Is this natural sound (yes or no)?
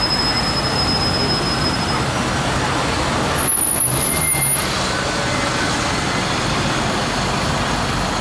yes